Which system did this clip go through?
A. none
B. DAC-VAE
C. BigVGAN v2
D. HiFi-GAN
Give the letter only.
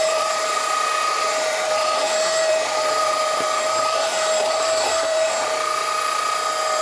C